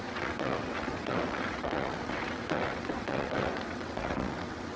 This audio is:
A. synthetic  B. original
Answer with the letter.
A